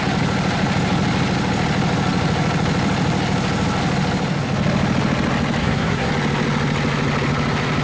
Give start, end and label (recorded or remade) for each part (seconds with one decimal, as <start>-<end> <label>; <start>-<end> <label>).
0.0-5.6 recorded; 5.6-6.1 remade; 6.1-7.8 recorded